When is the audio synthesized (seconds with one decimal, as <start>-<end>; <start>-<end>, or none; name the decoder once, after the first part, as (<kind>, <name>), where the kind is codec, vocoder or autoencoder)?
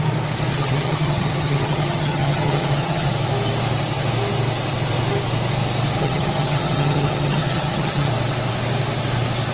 0.5-3.1 (vocoder, HiFi-GAN); 6.0-8.1